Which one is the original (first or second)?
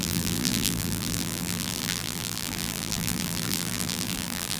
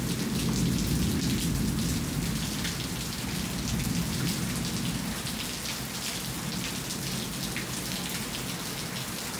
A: second